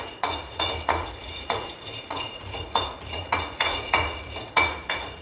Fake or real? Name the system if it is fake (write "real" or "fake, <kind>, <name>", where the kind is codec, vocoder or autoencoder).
fake, vocoder, Vocos